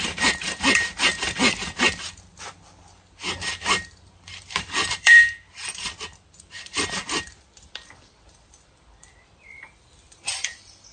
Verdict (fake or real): fake